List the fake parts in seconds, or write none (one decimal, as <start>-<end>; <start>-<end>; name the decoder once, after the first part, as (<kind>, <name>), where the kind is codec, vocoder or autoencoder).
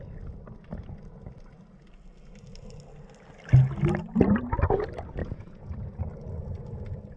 5.2-6.0 (vocoder, Vocos)